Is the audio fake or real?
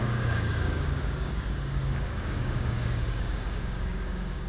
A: fake